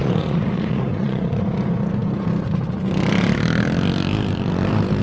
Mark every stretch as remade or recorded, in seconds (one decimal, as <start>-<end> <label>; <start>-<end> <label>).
0.0-1.4 remade; 1.4-5.0 recorded